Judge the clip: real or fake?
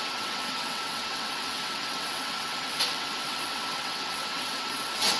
fake